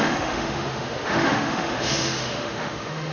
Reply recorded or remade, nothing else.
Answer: remade